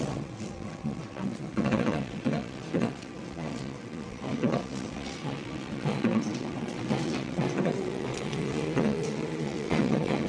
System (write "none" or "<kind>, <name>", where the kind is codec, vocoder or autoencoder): vocoder, WaveNeXt